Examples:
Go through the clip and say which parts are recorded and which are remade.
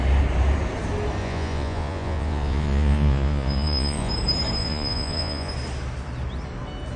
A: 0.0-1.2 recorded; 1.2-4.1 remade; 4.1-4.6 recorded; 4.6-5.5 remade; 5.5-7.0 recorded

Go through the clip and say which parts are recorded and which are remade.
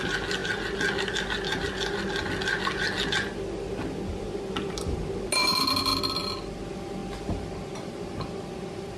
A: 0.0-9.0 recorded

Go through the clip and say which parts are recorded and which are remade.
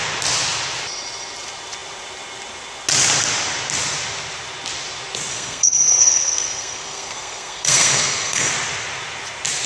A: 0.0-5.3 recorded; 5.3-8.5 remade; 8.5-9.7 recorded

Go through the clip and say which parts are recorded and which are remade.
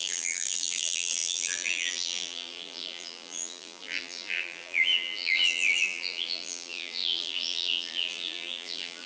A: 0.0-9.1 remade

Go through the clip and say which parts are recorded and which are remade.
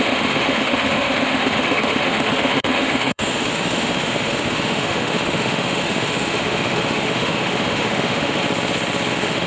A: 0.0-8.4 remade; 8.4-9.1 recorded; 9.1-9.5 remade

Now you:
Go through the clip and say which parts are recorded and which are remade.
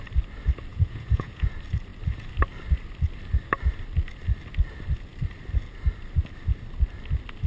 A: 0.0-0.7 recorded; 0.7-1.5 remade; 1.5-7.5 recorded